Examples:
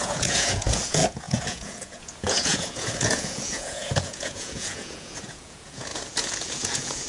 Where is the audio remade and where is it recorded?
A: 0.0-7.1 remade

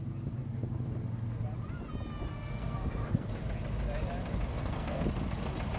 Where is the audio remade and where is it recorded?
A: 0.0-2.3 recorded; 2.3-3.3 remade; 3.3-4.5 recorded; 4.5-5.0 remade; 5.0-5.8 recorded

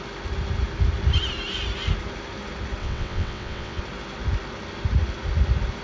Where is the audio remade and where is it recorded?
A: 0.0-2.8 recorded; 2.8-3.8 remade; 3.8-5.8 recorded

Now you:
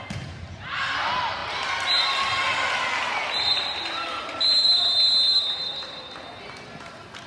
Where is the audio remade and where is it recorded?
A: 0.0-7.3 recorded